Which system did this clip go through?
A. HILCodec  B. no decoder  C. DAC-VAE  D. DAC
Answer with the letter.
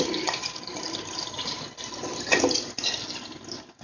B